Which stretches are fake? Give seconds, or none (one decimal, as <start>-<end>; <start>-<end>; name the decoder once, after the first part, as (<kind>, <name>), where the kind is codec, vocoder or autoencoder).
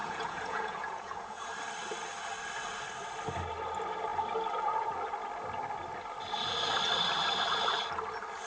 0.0-1.5 (vocoder, Vocos)